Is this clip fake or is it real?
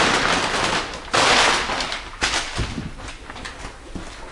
real